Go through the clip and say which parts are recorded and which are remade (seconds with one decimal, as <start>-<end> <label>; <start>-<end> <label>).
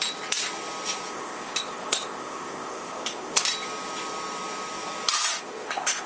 0.0-1.1 recorded; 1.1-3.4 remade; 3.4-5.4 recorded; 5.4-6.1 remade